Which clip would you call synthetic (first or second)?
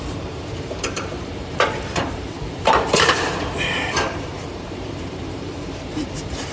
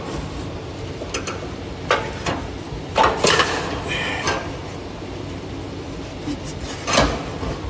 first